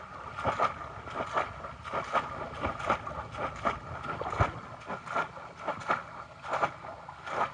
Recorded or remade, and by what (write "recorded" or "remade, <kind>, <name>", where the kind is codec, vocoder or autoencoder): recorded